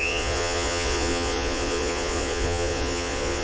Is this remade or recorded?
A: remade